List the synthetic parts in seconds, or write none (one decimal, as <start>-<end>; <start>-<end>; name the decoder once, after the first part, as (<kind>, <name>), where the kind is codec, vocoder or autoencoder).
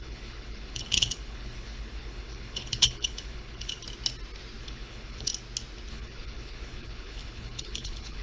0.0-3.8 (codec, HILCodec); 4.6-5.3; 5.9-8.2